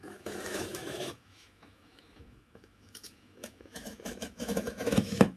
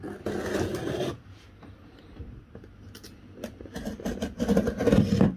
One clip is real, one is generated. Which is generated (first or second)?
first